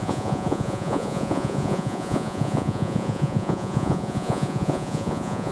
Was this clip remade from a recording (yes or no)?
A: yes